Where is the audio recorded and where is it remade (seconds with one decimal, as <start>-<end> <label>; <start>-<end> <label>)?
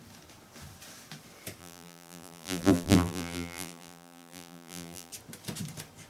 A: 0.0-1.6 recorded; 1.6-5.1 remade; 5.1-6.1 recorded